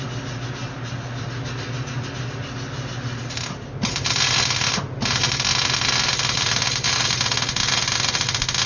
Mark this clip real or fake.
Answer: real